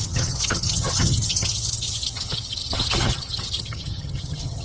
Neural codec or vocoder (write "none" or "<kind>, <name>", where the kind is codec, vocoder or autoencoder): vocoder, HiFi-GAN